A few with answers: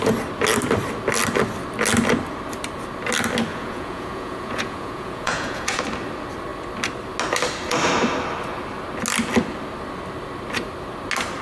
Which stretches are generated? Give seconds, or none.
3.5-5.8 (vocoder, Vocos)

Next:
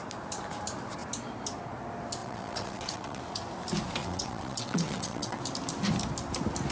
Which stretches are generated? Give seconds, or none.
2.2-3.2 (vocoder, WaveNeXt); 4.0-5.4

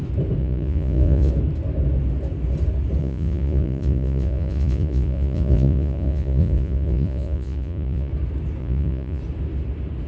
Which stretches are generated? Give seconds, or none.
0.4-1.3 (vocoder, Vocos); 3.0-8.1; 8.6-9.2